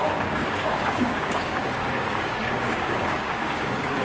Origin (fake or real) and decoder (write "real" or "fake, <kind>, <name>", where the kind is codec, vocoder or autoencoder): fake, codec, DAC